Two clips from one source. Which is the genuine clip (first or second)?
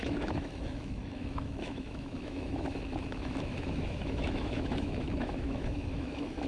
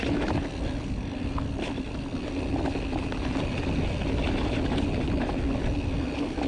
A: second